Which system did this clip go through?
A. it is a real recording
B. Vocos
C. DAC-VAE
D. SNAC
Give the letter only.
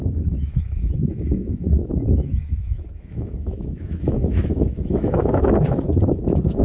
C